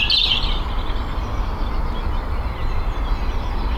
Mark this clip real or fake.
real